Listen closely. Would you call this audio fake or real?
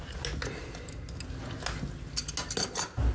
real